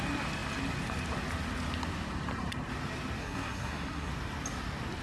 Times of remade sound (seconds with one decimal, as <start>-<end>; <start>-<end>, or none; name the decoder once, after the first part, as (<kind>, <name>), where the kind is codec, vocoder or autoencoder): 3.2-4.1 (codec, SNAC)